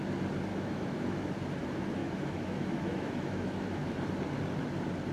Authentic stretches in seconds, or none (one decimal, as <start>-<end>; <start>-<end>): 0.0-0.5; 1.3-2.0; 3.9-5.1